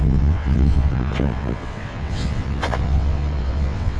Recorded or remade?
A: remade